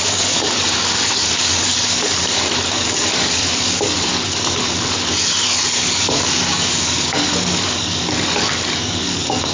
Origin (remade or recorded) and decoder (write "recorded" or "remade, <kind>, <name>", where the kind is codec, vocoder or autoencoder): remade, codec, DAC